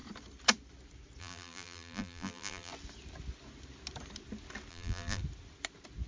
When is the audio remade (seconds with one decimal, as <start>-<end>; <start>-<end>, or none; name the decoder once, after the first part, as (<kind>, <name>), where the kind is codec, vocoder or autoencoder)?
1.2-2.7 (vocoder, BigVGAN v2); 4.7-5.2